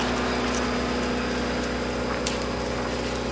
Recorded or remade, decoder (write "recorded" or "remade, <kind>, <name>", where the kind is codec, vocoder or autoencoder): recorded